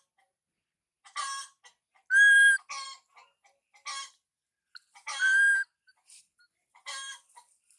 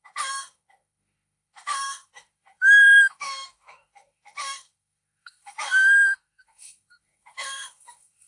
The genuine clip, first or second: first